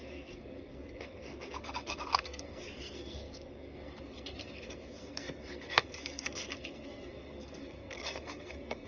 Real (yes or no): no